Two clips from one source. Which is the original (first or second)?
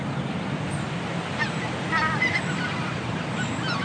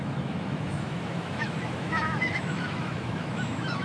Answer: first